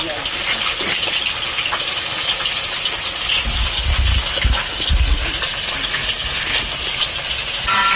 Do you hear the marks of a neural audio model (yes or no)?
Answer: no